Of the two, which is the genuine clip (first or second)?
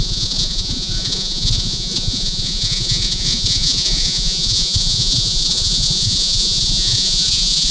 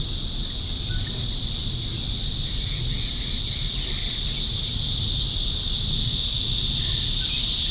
second